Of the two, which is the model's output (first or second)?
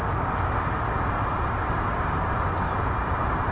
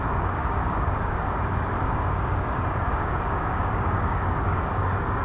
second